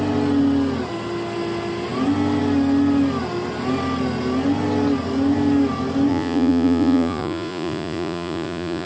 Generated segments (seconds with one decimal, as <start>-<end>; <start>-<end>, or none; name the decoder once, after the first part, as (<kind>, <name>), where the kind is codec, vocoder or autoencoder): 6.1-8.9 (vocoder, Vocos)